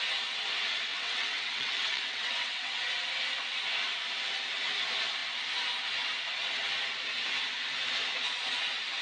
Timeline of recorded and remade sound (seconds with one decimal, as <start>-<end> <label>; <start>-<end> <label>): 0.0-0.9 recorded; 0.9-2.7 remade; 2.7-9.0 recorded